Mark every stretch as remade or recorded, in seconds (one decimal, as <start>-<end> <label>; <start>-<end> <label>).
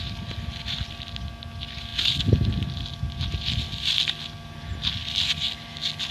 0.0-6.1 recorded